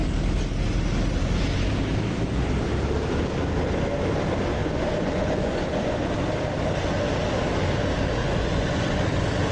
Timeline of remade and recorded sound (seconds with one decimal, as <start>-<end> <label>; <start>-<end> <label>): 0.0-4.6 recorded; 4.6-5.9 remade; 5.9-8.2 recorded; 8.2-9.0 remade; 9.0-9.5 recorded